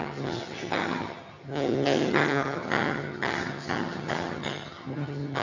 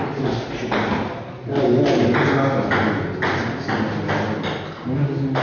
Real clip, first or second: second